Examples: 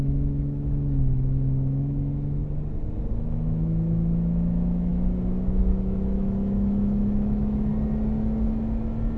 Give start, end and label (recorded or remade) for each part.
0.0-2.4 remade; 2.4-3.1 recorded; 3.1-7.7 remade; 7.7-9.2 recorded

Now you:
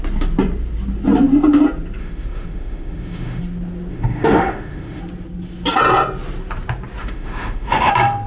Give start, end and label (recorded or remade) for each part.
0.0-2.0 recorded; 2.0-3.4 remade; 3.4-3.9 recorded; 3.9-5.0 remade; 5.0-7.0 recorded; 7.0-7.9 remade; 7.9-8.3 recorded

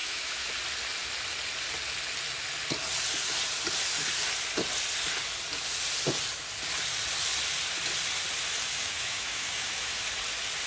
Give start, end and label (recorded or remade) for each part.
0.0-0.5 remade; 0.5-8.8 recorded; 8.8-10.1 remade; 10.1-10.7 recorded